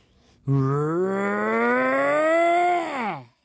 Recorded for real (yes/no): yes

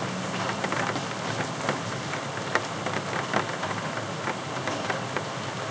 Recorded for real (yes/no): yes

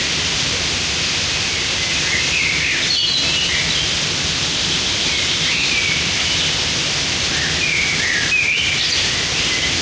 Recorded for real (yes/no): yes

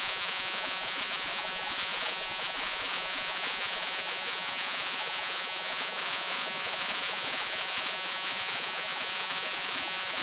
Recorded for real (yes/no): no